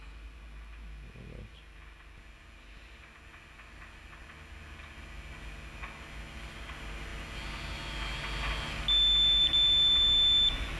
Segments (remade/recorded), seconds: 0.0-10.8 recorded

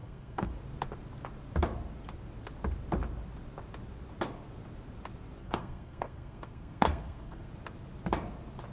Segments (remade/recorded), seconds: 0.0-0.5 remade; 0.5-5.4 recorded; 5.4-7.5 remade; 7.5-8.7 recorded

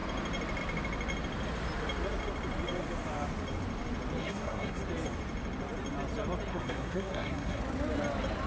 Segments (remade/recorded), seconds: 0.0-4.2 recorded; 4.2-4.8 remade; 4.8-6.5 recorded; 6.5-7.6 remade; 7.6-8.5 recorded

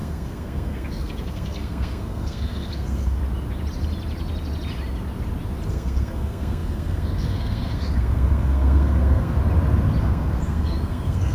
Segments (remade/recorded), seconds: 0.0-3.2 remade; 3.2-5.7 recorded; 5.7-9.4 remade; 9.4-10.0 recorded; 10.0-11.3 remade

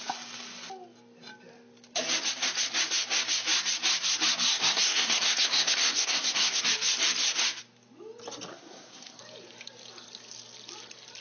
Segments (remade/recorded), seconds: 0.0-4.5 recorded; 4.5-6.6 remade; 6.6-8.5 recorded; 8.5-9.2 remade; 9.2-11.2 recorded